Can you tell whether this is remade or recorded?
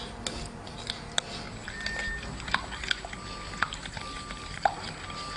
recorded